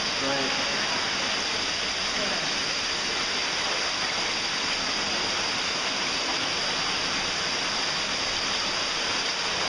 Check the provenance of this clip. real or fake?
real